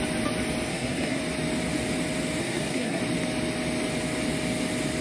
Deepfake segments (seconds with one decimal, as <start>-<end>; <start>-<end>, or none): 0.7-1.2; 2.4-3.0